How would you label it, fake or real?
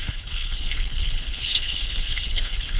fake